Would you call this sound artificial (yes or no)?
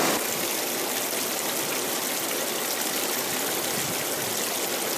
no